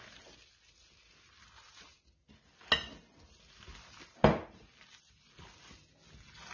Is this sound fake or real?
real